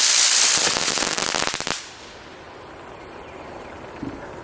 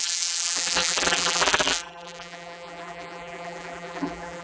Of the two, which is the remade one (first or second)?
second